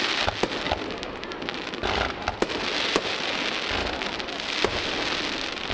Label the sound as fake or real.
real